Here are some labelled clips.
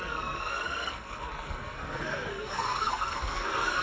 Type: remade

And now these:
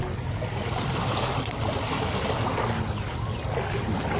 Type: recorded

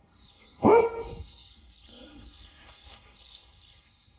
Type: remade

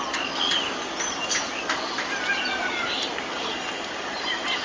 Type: recorded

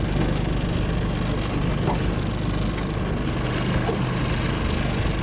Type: recorded